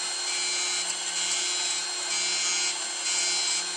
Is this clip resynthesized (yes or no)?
no